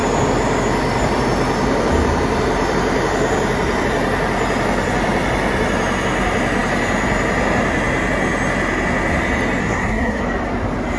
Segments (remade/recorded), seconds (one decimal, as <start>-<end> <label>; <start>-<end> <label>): 0.0-9.6 recorded; 9.6-10.2 remade; 10.2-11.0 recorded